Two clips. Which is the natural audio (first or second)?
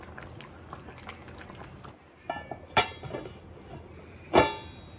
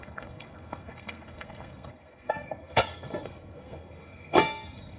first